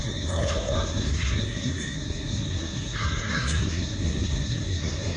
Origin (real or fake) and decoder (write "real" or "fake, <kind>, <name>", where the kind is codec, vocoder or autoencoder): fake, codec, SNAC